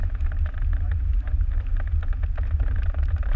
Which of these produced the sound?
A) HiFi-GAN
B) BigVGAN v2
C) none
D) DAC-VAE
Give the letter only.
B